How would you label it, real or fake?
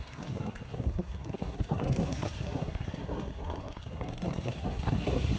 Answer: fake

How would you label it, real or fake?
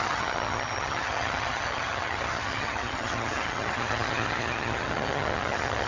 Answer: fake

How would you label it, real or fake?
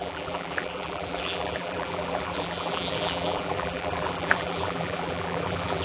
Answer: fake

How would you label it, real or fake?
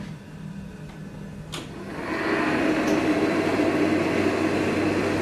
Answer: real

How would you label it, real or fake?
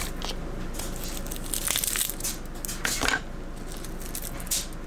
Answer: real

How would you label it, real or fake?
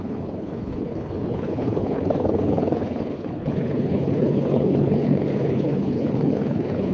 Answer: fake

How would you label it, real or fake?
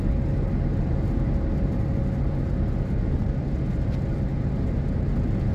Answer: real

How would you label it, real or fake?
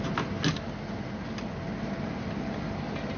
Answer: real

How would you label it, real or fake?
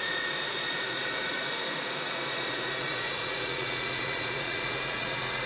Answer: fake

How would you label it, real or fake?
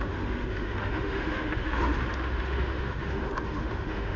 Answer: fake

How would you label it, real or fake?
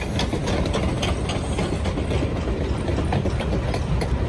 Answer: real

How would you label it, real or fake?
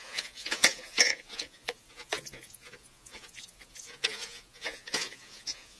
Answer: fake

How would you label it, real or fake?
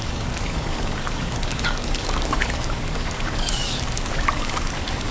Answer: fake